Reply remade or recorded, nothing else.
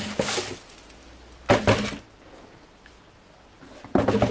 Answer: recorded